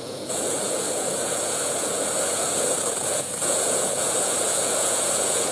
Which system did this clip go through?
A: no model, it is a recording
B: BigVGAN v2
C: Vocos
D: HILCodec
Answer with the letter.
C